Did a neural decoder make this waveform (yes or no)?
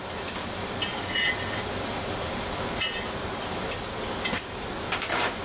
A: no